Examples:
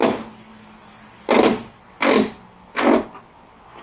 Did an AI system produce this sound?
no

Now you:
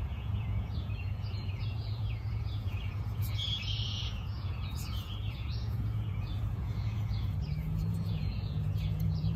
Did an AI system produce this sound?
yes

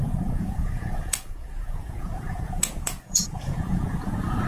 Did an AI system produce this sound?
yes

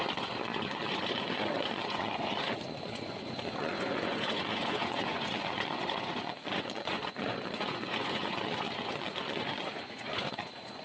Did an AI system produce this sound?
yes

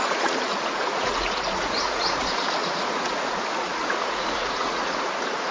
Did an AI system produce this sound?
yes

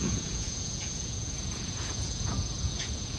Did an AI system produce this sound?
yes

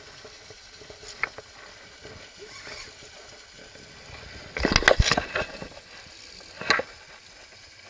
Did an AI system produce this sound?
no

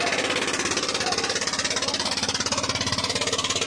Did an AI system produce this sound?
no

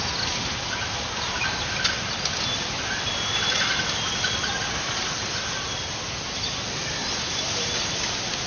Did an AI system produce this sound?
no